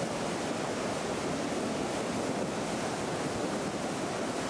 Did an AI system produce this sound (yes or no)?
no